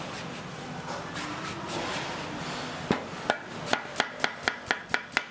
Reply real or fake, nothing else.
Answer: real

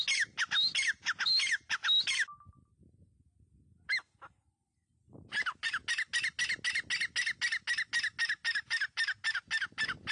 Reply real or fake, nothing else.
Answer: real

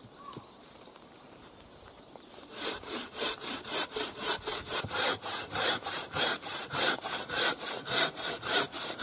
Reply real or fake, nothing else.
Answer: fake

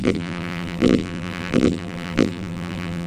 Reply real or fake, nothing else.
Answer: fake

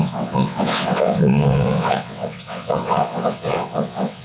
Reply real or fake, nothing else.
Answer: fake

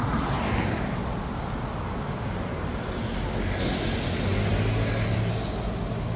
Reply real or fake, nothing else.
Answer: real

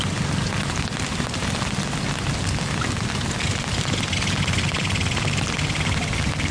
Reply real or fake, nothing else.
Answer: real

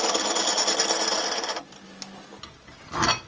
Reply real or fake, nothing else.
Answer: real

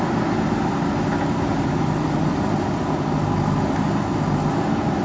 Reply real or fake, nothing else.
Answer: real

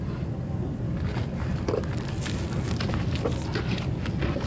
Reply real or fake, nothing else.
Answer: real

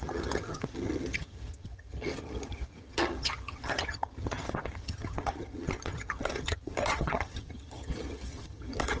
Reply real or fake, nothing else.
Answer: fake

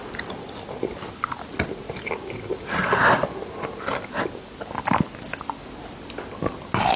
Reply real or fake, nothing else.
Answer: real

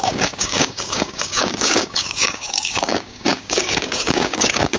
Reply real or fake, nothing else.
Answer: fake